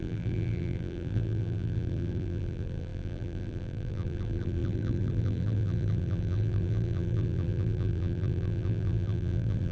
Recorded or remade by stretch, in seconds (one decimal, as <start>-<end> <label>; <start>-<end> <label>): 0.0-9.7 remade